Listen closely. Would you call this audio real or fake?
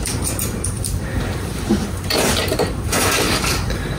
real